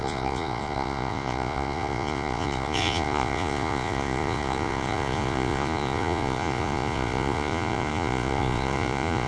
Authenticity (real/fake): fake